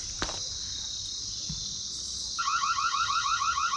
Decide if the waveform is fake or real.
real